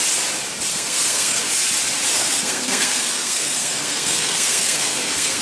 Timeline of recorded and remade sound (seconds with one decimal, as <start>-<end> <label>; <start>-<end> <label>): 0.0-0.7 recorded; 0.7-1.4 remade; 1.4-2.1 recorded; 2.1-5.4 remade